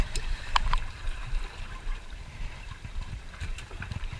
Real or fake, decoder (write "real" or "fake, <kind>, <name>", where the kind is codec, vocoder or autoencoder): fake, vocoder, BigVGAN v2